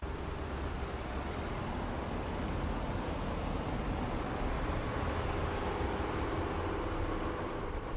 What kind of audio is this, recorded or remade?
recorded